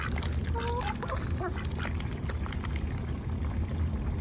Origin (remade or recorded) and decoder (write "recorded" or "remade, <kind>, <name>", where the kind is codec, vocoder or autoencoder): recorded